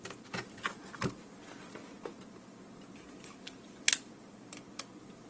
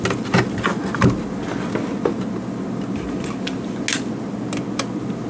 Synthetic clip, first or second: first